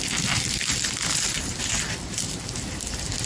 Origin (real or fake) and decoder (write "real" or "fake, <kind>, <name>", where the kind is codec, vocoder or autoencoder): fake, vocoder, BigVGAN v2